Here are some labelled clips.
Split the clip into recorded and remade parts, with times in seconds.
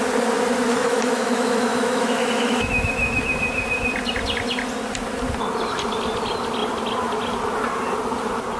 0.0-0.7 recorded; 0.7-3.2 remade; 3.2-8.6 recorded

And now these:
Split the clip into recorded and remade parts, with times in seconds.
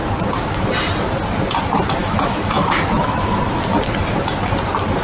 0.0-2.0 recorded; 2.0-3.4 remade; 3.4-5.0 recorded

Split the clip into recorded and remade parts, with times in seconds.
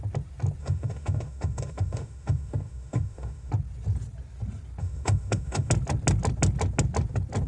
0.0-0.6 recorded; 0.6-3.5 remade; 3.5-4.8 recorded; 4.8-5.7 remade; 5.7-7.5 recorded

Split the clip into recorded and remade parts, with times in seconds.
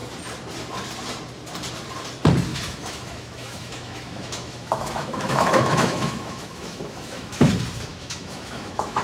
0.0-2.5 recorded; 2.5-7.5 remade; 7.5-7.9 recorded; 7.9-9.0 remade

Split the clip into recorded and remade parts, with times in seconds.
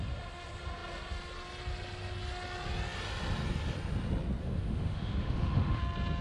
0.0-4.4 recorded; 4.4-5.8 remade; 5.8-6.2 recorded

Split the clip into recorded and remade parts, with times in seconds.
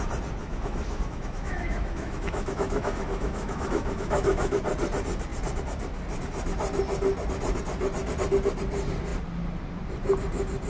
0.0-0.4 recorded; 0.4-4.6 remade; 4.6-10.7 recorded